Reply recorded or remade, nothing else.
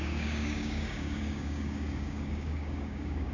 remade